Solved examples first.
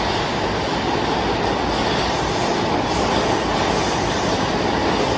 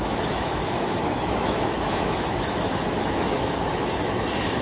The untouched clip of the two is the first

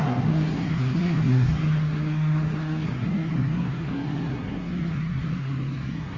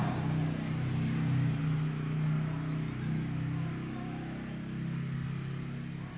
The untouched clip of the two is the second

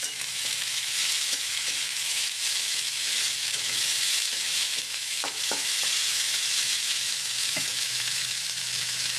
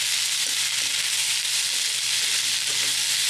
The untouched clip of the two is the second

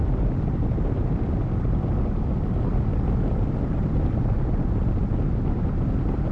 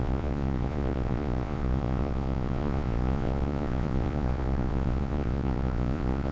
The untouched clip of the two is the first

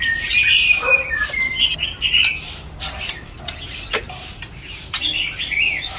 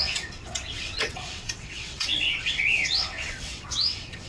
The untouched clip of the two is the first